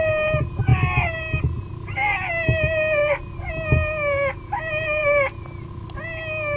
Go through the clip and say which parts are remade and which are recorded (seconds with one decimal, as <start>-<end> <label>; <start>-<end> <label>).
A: 0.0-6.6 recorded